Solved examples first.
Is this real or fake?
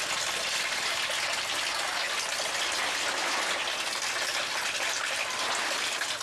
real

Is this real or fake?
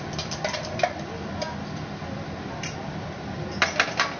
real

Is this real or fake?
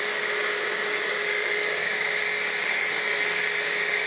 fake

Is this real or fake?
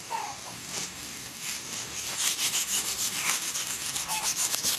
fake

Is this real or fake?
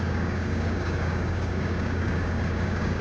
fake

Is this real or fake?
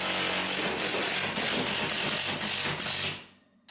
real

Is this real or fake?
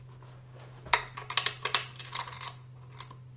real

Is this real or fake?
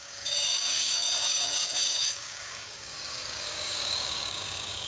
fake